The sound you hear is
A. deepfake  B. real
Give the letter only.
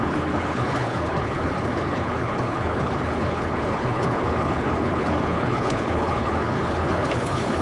A